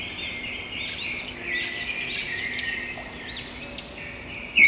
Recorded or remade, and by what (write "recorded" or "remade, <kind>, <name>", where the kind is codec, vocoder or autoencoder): recorded